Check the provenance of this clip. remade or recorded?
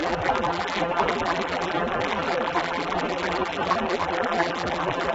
remade